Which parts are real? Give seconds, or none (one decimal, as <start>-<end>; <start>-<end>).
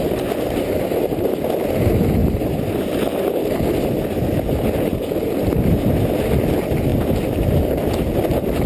0.0-8.7